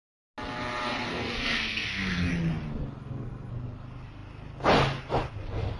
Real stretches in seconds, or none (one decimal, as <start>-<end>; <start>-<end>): 0.0-1.1; 2.3-3.0; 3.5-5.8